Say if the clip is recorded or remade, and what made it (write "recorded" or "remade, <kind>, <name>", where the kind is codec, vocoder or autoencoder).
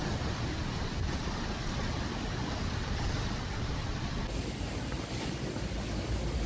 recorded